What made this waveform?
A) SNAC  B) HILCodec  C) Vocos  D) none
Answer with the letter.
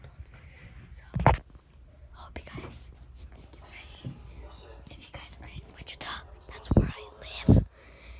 D